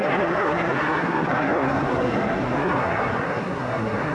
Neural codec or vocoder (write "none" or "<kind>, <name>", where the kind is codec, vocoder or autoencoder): codec, SNAC